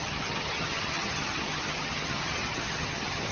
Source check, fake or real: fake